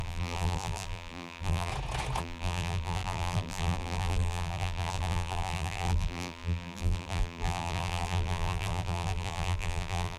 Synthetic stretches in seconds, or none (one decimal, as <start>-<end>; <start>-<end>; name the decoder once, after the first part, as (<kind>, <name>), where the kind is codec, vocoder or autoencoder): 0.0-1.7 (vocoder, BigVGAN v2); 2.2-10.2